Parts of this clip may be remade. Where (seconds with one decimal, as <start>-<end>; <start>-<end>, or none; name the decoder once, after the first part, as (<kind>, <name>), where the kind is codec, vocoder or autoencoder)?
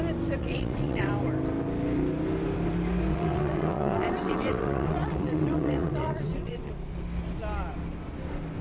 0.4-1.1 (vocoder, WaveNeXt); 3.1-6.7